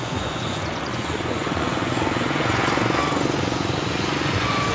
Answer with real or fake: fake